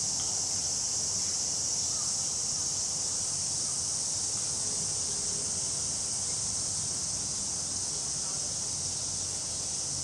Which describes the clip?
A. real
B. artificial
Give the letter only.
A